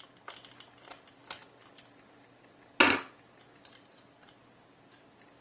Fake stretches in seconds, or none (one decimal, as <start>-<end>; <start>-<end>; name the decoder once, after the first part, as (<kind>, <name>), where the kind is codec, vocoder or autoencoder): none